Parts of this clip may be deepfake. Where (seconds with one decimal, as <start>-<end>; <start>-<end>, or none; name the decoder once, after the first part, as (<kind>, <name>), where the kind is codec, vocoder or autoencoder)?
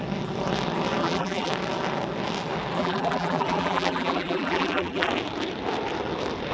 1.0-1.5 (vocoder, BigVGAN v2); 2.8-5.1